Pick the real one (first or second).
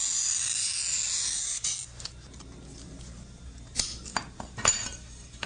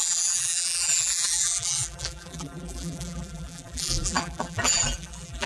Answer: first